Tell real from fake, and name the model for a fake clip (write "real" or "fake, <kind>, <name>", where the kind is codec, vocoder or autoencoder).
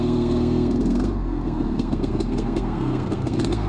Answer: fake, codec, SNAC